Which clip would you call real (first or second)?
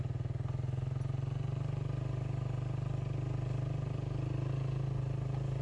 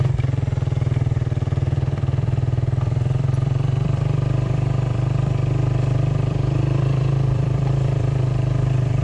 first